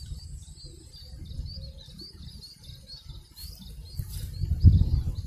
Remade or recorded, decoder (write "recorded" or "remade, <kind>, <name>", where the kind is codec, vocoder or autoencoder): recorded